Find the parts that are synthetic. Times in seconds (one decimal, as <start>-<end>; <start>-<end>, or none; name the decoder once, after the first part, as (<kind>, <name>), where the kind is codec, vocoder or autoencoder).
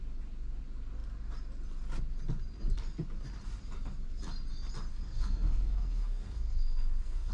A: 4.9-7.3 (codec, SNAC)